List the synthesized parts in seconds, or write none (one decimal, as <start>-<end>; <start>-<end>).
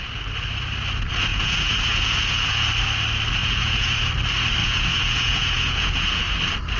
1.3-2.7; 3.4-4.1; 4.6-6.2